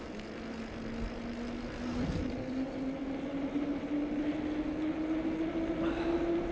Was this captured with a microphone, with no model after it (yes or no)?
yes